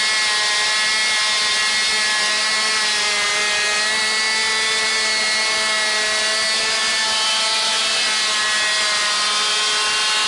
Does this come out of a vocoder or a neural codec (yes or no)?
no